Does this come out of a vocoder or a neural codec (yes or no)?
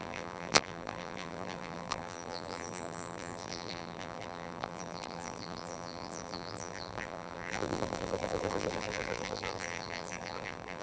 yes